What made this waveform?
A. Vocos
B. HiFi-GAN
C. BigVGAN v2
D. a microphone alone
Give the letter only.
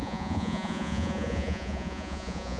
A